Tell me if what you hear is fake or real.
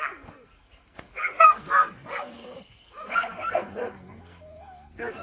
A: fake